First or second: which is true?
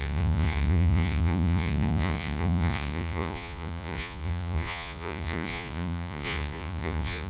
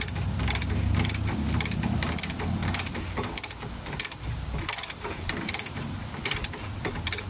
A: second